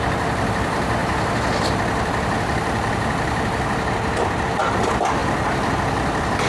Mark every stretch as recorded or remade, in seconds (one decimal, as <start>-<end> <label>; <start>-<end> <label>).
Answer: 0.0-5.2 recorded; 5.2-5.7 remade; 5.7-6.5 recorded